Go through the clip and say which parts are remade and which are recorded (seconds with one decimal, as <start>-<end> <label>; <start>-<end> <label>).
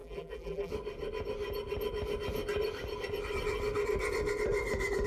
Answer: 0.0-0.7 remade; 0.7-5.1 recorded